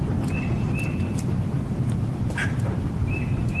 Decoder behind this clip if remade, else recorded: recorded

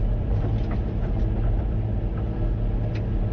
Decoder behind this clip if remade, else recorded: recorded